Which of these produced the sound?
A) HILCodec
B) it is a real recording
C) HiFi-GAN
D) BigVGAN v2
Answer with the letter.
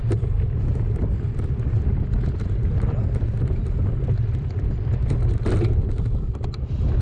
D